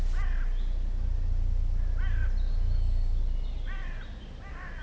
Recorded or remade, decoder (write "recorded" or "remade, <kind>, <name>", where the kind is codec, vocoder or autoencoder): recorded